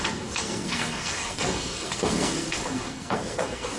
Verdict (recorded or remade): remade